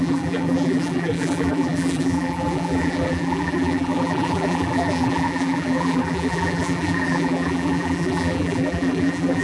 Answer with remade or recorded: remade